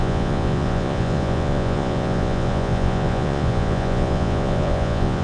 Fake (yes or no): yes